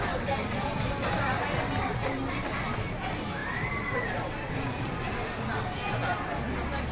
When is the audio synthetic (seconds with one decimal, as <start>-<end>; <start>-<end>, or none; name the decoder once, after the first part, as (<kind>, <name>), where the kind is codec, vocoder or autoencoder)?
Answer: none